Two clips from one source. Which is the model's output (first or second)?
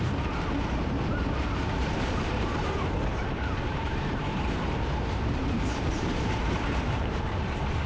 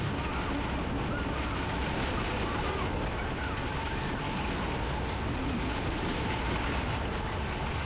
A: first